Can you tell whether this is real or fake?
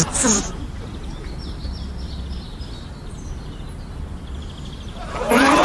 real